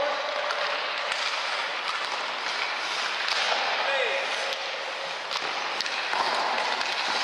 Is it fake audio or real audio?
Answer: real